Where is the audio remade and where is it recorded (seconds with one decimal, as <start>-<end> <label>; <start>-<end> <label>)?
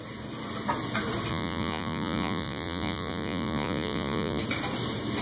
0.0-1.3 recorded; 1.3-4.4 remade; 4.4-5.2 recorded